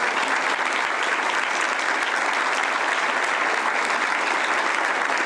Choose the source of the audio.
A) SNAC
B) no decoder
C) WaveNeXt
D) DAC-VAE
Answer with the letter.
B